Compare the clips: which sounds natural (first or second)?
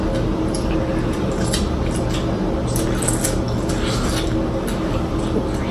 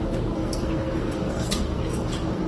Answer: first